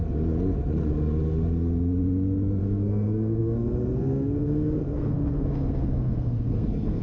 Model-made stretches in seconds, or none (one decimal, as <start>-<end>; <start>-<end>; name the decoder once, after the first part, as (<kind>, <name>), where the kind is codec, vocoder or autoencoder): 2.6-7.0 (codec, SNAC)